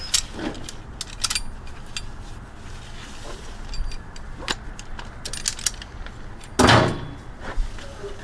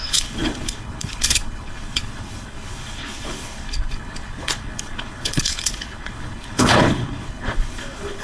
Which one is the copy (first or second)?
second